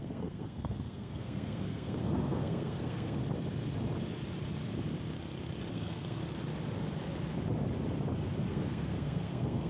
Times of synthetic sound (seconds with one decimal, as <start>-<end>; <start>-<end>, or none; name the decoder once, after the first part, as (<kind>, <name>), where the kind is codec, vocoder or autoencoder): 0.0-3.2 (codec, SNAC); 5.7-6.2; 8.5-9.7